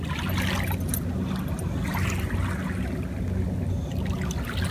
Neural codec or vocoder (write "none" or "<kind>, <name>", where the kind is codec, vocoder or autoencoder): none